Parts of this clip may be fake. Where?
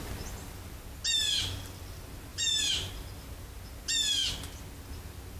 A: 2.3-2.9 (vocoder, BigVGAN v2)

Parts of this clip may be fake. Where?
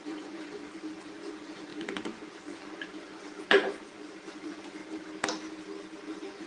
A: 0.0-4.8 (vocoder, Vocos); 6.0-6.5